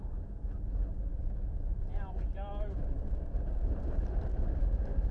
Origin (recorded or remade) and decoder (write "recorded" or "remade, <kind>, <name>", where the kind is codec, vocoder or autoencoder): recorded